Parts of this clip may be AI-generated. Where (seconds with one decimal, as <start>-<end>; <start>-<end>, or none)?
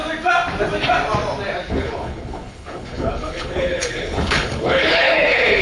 1.7-5.6